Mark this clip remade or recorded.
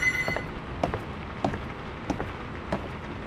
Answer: recorded